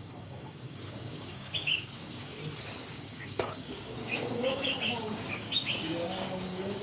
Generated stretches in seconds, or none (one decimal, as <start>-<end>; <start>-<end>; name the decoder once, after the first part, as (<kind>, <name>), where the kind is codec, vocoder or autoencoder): 0.0-2.4 (codec, DAC); 2.9-6.8